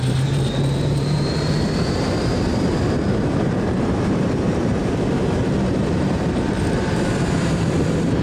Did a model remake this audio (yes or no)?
yes